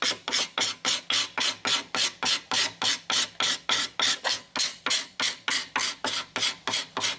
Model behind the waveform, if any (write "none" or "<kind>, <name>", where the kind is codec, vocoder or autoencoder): none